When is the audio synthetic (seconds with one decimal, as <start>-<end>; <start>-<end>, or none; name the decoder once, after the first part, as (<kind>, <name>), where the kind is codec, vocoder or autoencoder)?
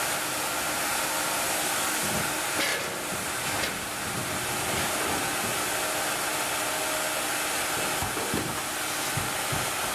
none